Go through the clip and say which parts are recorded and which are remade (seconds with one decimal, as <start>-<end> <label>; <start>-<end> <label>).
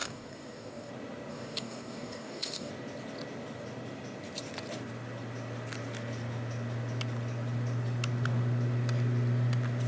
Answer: 0.0-0.9 remade; 0.9-1.3 recorded; 1.3-2.7 remade; 2.7-9.9 recorded